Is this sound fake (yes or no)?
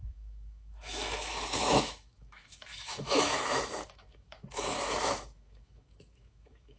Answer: yes